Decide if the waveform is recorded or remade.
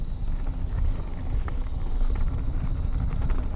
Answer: recorded